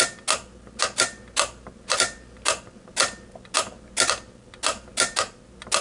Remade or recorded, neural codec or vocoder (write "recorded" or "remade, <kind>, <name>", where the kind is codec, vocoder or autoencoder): recorded